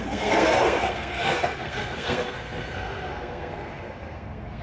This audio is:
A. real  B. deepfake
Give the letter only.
B